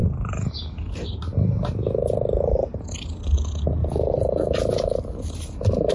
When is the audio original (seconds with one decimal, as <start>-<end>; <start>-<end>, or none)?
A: 0.0-5.9